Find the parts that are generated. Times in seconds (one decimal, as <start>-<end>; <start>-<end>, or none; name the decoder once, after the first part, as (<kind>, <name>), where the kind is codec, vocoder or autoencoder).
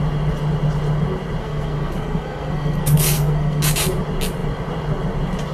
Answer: 1.4-3.6 (codec, SNAC)